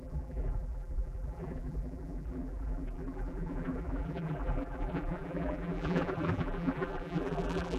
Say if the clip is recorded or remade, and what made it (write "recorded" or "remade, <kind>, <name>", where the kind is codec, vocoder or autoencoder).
remade, vocoder, BigVGAN v2